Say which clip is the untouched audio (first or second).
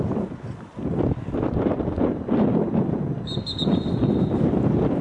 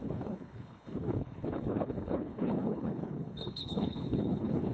first